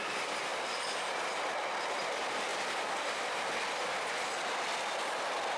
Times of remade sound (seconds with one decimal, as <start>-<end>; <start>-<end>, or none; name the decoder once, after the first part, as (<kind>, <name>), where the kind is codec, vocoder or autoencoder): none